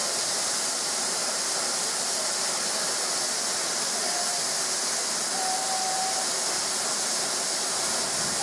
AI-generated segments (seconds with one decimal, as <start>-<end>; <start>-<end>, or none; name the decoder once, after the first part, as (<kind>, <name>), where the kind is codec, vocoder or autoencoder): 0.0-1.2 (vocoder, BigVGAN v2)